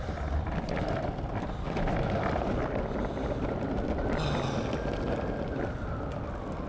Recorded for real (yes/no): yes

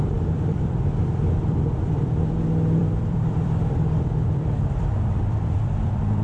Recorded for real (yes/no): no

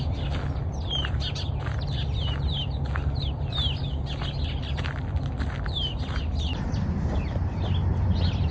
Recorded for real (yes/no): yes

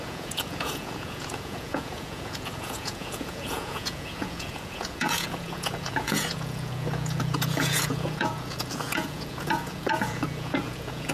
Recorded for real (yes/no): no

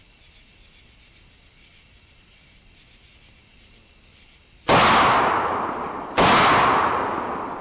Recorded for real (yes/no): yes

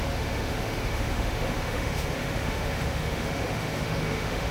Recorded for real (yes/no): no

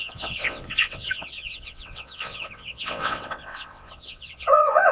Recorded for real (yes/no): no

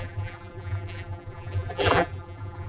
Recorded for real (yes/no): no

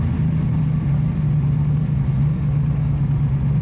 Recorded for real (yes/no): yes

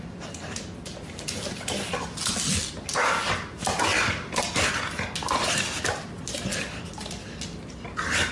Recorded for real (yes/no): yes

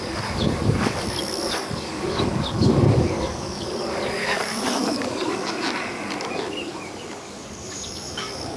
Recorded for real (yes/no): no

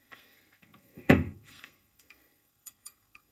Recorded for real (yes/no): no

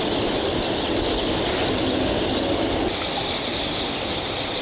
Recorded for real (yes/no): yes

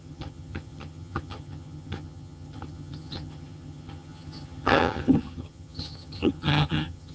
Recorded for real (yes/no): no